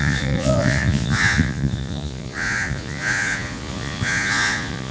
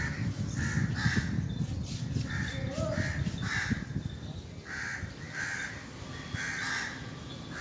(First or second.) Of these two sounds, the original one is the second